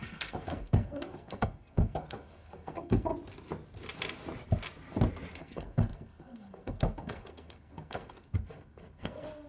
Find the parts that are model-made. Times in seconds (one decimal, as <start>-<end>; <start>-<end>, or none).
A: 0.0-3.1; 5.4-9.5